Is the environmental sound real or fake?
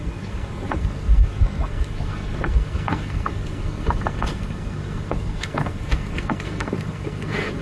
fake